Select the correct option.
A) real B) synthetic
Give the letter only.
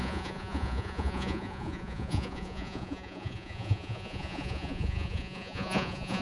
B